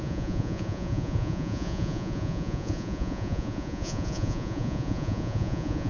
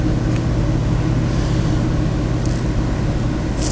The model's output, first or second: first